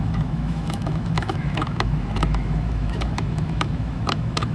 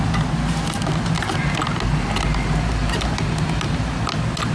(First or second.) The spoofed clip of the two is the first